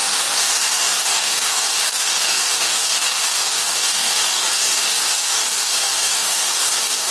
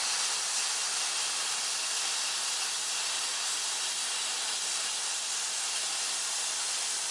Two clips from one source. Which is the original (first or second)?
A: second